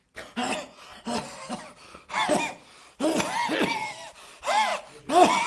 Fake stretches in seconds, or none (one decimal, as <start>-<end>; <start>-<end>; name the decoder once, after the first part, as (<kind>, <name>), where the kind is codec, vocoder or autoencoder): none

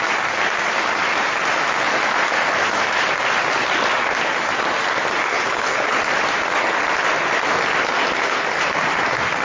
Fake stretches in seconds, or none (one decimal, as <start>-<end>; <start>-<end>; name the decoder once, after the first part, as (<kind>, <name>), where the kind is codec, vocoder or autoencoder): 5.3-6.0 (codec, HILCodec)

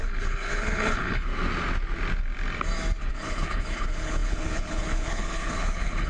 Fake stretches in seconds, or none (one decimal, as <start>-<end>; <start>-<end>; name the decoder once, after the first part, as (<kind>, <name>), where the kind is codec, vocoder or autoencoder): 0.0-1.3 (codec, HILCodec); 3.1-6.1

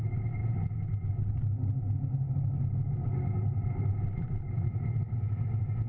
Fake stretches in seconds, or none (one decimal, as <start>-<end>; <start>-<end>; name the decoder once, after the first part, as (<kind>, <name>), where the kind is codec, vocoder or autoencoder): none

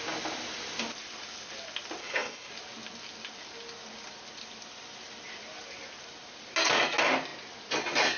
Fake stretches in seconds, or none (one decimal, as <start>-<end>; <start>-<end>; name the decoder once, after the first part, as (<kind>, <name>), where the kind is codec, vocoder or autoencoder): 2.0-2.5 (codec, HILCodec)

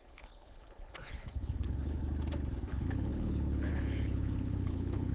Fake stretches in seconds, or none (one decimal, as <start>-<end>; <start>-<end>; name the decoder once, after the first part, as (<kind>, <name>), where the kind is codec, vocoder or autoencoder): 0.0-2.0 (codec, HILCodec); 2.7-5.1

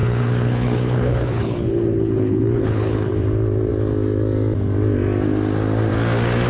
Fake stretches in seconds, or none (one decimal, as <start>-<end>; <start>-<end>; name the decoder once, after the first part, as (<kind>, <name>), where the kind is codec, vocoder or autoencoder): 0.0-3.1 (codec, HILCodec)

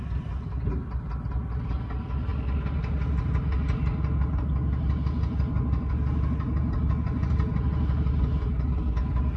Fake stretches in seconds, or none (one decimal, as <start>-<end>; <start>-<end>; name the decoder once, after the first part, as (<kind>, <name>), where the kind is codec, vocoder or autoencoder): none